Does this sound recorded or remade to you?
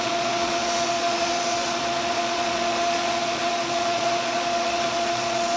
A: remade